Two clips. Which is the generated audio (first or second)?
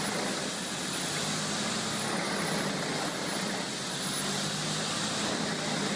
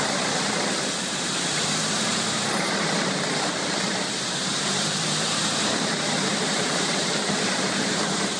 second